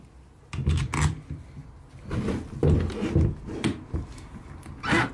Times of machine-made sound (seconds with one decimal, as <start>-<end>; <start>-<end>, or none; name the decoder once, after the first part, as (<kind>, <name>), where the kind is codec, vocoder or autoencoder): none